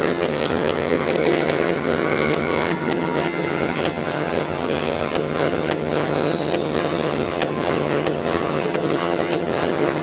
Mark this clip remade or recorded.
remade